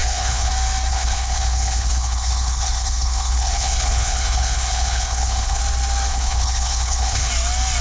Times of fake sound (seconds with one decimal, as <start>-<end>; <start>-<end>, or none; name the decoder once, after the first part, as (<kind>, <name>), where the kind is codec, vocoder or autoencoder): 0.0-0.5 (codec, HILCodec); 0.9-5.6; 6.1-7.3